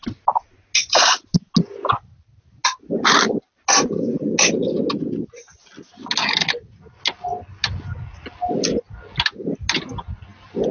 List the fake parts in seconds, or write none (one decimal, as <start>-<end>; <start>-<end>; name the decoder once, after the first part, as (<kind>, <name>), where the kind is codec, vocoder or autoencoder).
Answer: none

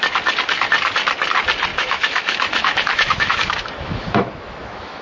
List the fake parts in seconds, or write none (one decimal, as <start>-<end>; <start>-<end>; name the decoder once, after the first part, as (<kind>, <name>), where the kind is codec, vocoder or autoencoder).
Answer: 1.7-5.0 (autoencoder, DAC-VAE)

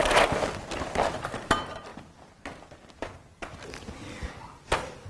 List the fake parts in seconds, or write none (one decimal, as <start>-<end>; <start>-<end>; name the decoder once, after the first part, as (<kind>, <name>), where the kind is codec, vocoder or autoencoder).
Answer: none

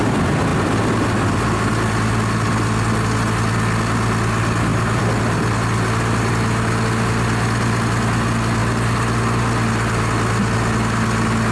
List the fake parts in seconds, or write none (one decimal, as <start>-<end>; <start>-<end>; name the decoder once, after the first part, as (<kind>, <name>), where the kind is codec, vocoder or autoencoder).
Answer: none

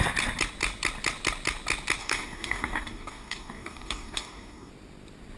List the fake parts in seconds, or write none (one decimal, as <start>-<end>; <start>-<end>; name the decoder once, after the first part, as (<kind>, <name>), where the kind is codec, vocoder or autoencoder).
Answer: 2.0-4.7 (codec, DAC)